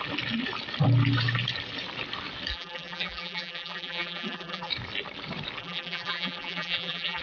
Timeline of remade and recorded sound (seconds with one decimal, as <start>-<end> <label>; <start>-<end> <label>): 0.0-2.5 recorded; 2.5-4.7 remade; 4.7-5.6 recorded; 5.6-7.2 remade